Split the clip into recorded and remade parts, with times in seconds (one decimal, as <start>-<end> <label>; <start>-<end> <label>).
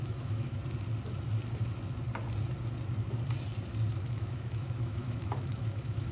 0.0-0.6 remade; 0.6-3.9 recorded; 3.9-6.1 remade